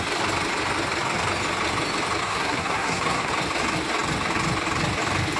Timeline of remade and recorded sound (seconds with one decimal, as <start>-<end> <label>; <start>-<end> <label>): 0.0-2.2 recorded; 2.2-3.3 remade; 3.3-5.4 recorded